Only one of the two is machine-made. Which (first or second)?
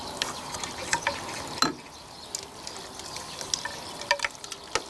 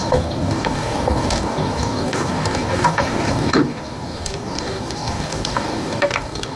second